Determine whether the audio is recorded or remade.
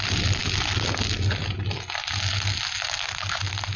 recorded